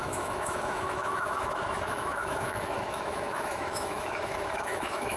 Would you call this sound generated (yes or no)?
yes